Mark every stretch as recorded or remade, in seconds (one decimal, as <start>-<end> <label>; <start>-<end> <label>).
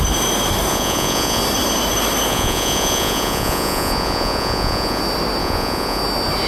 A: 0.0-0.7 recorded; 0.7-1.4 remade; 1.4-2.3 recorded; 2.3-5.0 remade; 5.0-5.4 recorded; 5.4-6.0 remade; 6.0-6.5 recorded